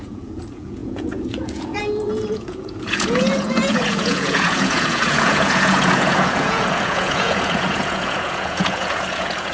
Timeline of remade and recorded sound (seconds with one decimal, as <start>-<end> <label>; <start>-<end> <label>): 0.0-9.5 remade